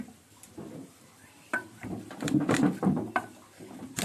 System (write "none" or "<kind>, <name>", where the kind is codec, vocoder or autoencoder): vocoder, BigVGAN v2